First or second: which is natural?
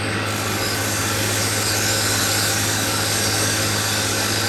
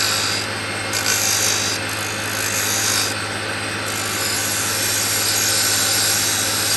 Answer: second